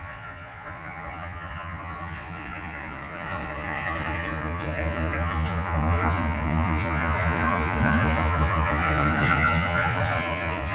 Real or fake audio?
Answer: fake